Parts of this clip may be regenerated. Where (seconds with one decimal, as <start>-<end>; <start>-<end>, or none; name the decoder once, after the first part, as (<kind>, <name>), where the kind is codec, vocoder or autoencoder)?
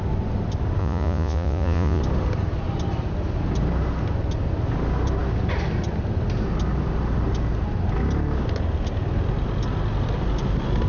0.8-2.0 (vocoder, Vocos)